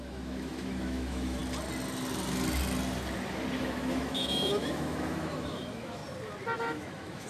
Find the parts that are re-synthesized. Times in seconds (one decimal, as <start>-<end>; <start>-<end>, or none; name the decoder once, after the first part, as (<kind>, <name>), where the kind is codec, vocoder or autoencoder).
0.0-1.4 (autoencoder, DAC-VAE); 3.6-6.0; 6.6-7.3